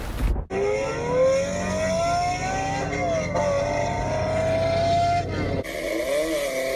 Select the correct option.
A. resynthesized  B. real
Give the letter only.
B